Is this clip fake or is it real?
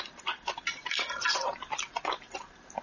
real